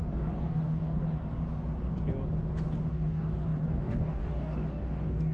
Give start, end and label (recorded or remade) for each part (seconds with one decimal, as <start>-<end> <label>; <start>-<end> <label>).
0.0-1.0 remade; 1.0-2.9 recorded; 2.9-5.3 remade